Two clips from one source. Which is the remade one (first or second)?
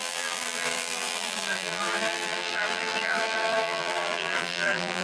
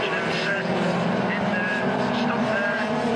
first